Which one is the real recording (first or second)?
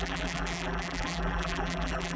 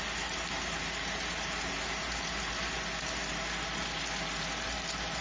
second